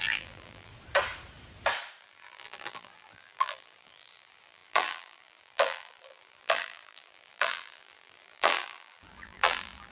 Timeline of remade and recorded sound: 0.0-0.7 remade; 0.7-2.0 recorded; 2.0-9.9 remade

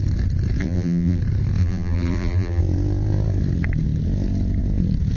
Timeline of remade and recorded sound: 0.0-0.6 recorded; 0.6-1.2 remade; 1.2-1.6 recorded; 1.6-2.6 remade; 2.6-5.2 recorded

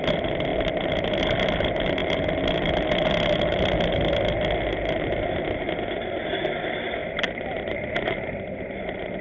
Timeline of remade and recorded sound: 0.0-7.0 recorded; 7.0-8.4 remade; 8.4-9.2 recorded

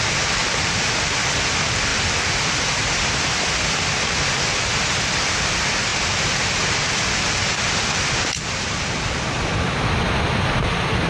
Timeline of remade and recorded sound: 0.0-5.9 recorded; 5.9-11.1 remade